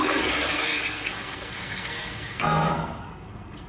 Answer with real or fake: fake